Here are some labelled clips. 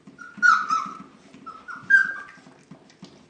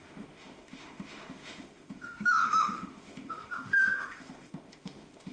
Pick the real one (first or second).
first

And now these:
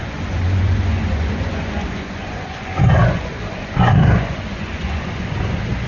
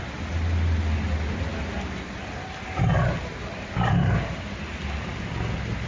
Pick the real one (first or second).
second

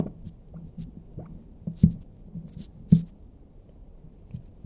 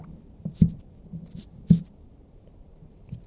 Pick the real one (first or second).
first